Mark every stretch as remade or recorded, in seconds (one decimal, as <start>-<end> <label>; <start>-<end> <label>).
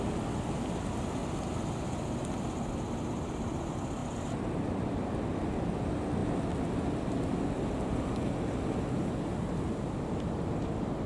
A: 0.0-4.0 recorded; 4.0-5.1 remade; 5.1-11.1 recorded